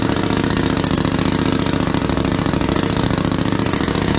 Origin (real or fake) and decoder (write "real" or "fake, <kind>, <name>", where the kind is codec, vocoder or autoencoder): real